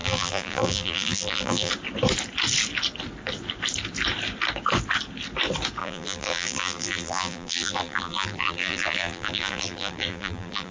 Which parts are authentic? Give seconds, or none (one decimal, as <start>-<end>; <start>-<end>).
1.7-5.8